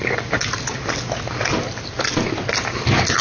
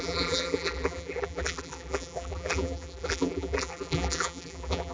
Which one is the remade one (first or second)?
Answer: second